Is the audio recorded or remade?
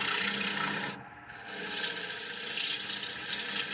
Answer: recorded